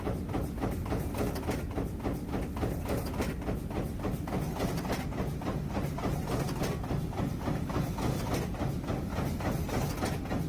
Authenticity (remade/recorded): recorded